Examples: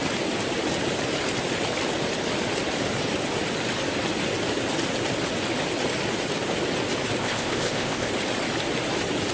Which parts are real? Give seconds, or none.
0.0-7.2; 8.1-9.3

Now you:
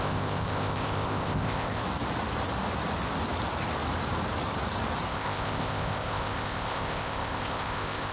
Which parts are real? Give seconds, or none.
1.8-5.1

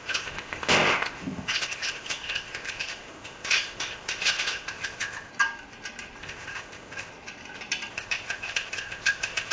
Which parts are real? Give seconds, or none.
5.3-6.2; 7.1-7.9

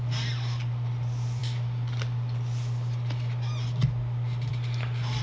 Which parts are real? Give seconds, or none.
0.0-5.2

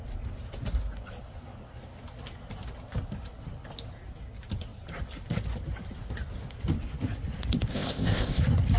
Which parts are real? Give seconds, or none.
0.0-7.7; 8.4-8.8

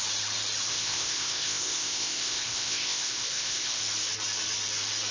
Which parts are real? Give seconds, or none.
0.0-0.7; 3.8-5.1

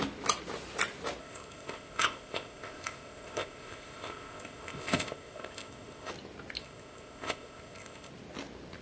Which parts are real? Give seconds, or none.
0.0-1.2; 6.1-6.6; 8.1-8.8